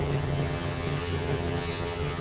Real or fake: fake